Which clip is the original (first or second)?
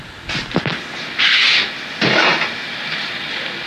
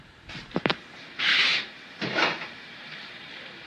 first